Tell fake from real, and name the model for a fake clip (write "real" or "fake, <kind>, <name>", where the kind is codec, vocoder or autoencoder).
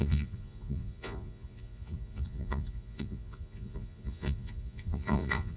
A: fake, vocoder, Vocos